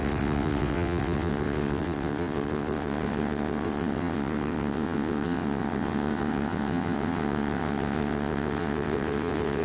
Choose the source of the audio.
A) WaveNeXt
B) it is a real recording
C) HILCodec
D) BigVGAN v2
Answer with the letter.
A